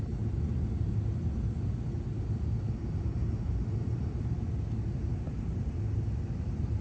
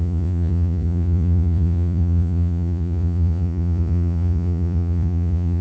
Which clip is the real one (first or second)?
first